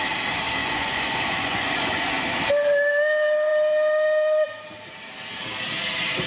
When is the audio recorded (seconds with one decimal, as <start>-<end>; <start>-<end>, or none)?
0.0-0.6; 2.1-6.3